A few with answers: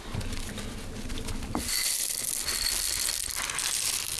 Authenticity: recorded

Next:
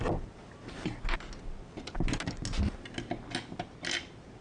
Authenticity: recorded